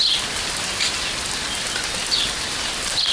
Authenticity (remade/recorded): recorded